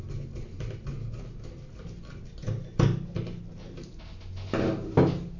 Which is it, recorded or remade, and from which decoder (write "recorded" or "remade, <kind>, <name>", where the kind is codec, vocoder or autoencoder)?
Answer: recorded